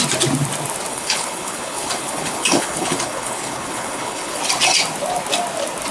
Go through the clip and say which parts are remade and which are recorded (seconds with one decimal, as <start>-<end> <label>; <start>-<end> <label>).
0.0-0.9 recorded; 0.9-4.4 remade; 4.4-5.9 recorded